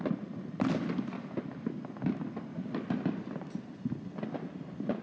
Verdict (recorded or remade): recorded